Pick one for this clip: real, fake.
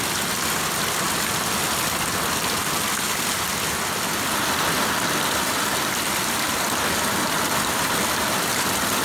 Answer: real